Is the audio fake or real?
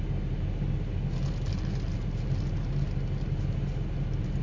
real